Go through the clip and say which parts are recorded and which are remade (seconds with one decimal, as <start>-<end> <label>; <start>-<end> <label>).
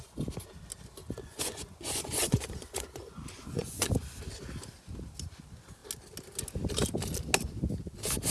0.0-1.0 recorded; 1.0-3.9 remade; 3.9-8.3 recorded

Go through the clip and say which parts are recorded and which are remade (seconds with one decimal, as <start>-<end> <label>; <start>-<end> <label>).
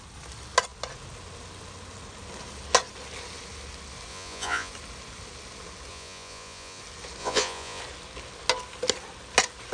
0.0-4.1 recorded; 4.1-4.7 remade; 4.7-5.9 recorded; 5.9-6.8 remade; 6.8-7.2 recorded; 7.2-7.8 remade; 7.8-9.7 recorded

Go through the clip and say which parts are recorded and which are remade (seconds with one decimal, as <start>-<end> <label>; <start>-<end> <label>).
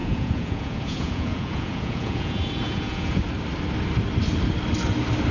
0.0-3.2 remade; 3.2-5.3 recorded